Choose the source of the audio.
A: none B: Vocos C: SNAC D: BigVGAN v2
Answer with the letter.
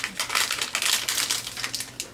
A